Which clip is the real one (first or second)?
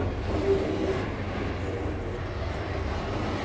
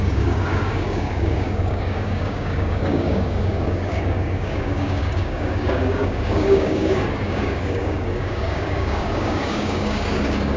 first